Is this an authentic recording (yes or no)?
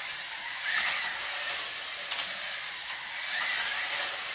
yes